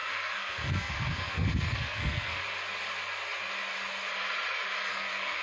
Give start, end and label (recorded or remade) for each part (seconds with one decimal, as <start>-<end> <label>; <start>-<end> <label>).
0.0-2.4 remade; 2.4-4.9 recorded; 4.9-5.4 remade